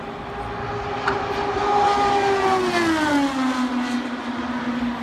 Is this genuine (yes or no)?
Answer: yes